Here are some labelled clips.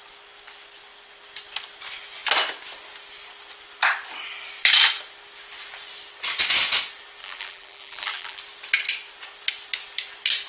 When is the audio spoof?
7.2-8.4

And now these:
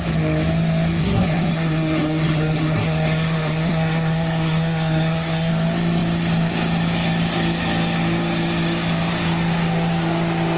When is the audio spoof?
1.0-5.5

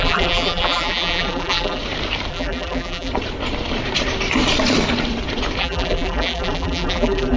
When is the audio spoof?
0.0-1.8; 2.3-3.1; 5.6-7.4

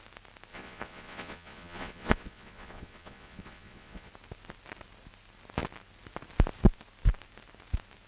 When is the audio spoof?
0.5-4.1

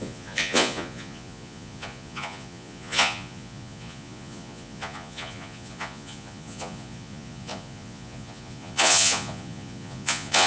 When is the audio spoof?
0.0-10.5

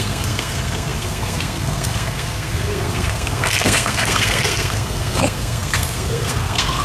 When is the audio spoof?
0.0-6.8

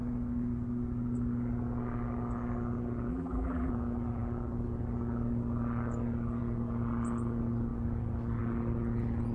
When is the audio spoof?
3.1-3.7